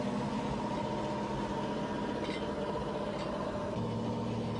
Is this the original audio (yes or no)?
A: yes